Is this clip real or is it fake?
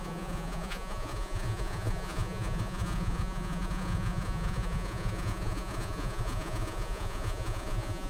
fake